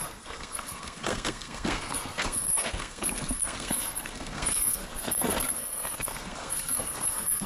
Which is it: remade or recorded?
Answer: remade